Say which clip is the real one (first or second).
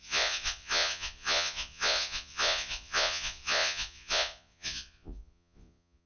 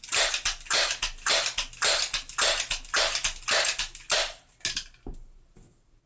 second